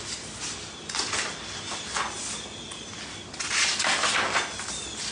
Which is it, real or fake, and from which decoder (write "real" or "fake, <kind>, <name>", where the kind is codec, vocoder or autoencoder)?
real